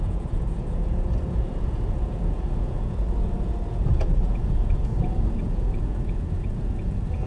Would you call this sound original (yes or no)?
no